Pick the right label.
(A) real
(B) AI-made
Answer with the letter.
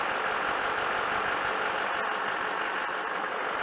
A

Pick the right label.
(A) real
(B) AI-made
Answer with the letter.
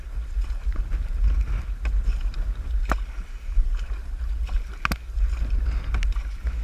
A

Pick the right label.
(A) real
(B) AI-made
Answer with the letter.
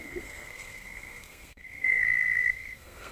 B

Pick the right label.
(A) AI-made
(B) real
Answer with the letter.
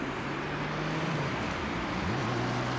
B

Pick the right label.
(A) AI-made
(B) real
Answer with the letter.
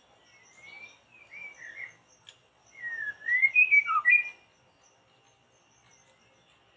B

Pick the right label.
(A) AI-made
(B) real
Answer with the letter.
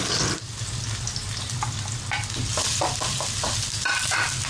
B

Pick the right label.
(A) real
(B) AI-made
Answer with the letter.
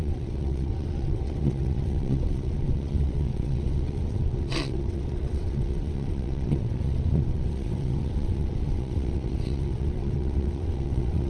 B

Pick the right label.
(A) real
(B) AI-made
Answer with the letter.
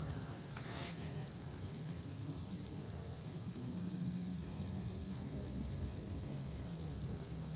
B